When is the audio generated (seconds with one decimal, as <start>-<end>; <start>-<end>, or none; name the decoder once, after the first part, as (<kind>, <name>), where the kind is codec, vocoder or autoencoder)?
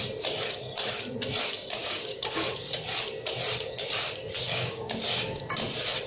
1.8-2.6 (codec, DAC); 4.5-5.4